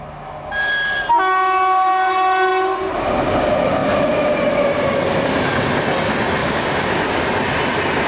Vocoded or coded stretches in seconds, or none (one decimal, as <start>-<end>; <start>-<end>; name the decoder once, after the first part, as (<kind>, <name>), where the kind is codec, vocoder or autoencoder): 6.4-7.0 (codec, DAC)